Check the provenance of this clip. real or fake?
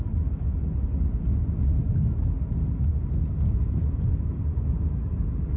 real